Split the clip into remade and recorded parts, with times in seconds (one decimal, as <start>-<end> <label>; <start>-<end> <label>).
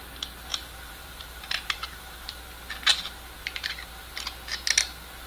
0.0-0.5 recorded; 0.5-2.4 remade; 2.4-2.9 recorded; 2.9-4.1 remade; 4.1-5.3 recorded